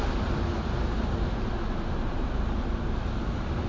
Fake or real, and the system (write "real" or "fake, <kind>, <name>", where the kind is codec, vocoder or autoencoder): real